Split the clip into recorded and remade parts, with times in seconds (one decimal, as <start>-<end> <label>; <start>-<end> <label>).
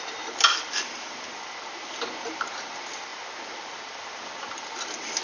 0.0-5.2 recorded